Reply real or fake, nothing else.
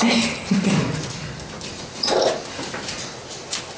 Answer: real